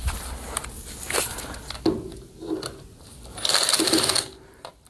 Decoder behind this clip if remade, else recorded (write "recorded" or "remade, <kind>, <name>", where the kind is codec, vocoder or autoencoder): recorded